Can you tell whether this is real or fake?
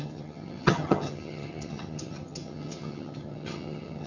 fake